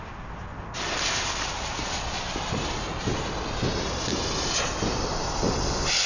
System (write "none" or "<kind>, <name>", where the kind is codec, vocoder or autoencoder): none